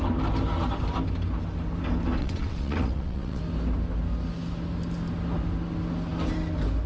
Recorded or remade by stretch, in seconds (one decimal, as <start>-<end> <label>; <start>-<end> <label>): 0.0-2.2 recorded; 2.2-3.4 remade; 3.4-6.9 recorded